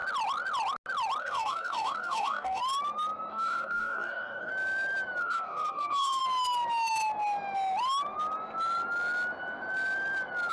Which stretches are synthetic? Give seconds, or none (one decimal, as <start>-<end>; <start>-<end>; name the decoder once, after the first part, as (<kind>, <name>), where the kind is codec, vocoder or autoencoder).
1.2-2.6 (codec, DAC); 3.3-4.5; 5.2-6.2